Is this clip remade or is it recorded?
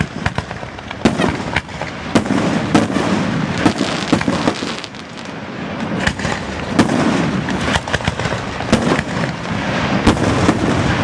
recorded